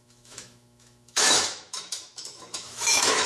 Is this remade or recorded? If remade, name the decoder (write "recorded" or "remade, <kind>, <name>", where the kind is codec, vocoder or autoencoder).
remade, autoencoder, DAC-VAE